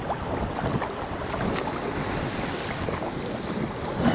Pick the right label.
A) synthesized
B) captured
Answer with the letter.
B